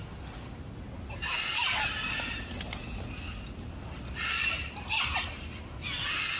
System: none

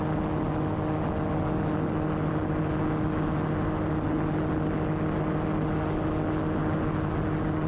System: none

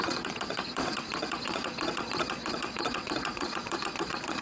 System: vocoder, Vocos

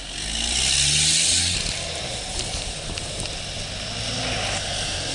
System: none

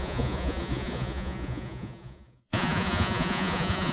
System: vocoder, Vocos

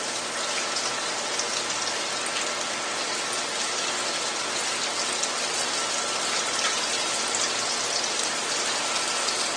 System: none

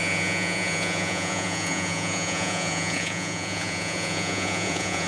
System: vocoder, Vocos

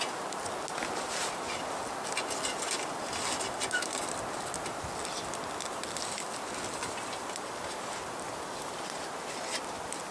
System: none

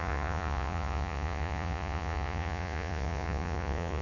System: vocoder, Vocos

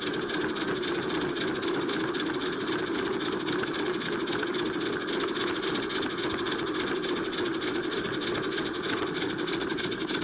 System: none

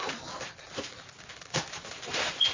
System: none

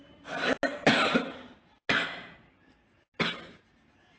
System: none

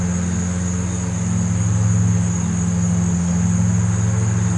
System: none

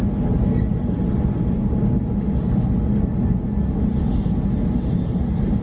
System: none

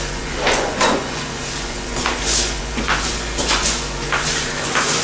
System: vocoder, Vocos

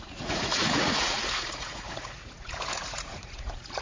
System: vocoder, Vocos